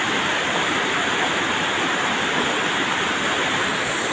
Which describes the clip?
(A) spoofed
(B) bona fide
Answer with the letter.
B